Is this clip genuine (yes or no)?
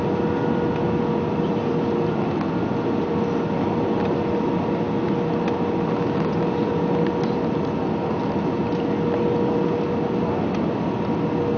yes